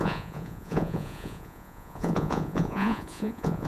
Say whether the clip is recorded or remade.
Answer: remade